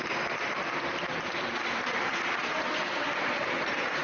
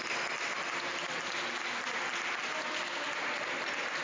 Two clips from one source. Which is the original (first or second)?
second